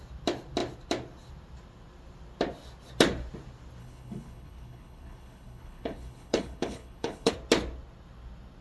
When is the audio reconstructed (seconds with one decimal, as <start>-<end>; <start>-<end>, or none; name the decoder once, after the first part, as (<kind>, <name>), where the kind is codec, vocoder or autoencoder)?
3.8-7.3 (codec, HILCodec)